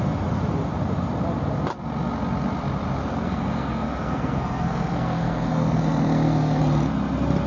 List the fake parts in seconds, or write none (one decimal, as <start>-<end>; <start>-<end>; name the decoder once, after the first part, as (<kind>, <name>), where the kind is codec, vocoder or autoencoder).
3.0-6.6 (codec, SNAC)